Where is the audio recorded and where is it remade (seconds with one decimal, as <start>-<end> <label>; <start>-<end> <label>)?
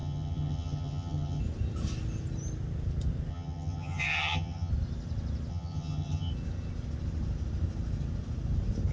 0.0-1.4 remade; 1.4-3.3 recorded; 3.3-4.7 remade; 4.7-5.5 recorded; 5.5-6.3 remade; 6.3-8.9 recorded